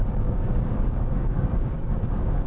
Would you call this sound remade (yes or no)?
yes